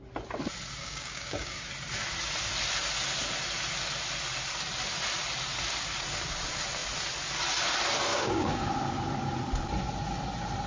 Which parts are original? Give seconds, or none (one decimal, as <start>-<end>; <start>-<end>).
0.0-0.8; 1.7-8.1; 8.7-10.7